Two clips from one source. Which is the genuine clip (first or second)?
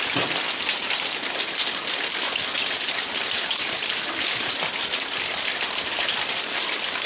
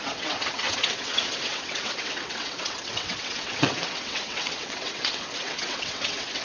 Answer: first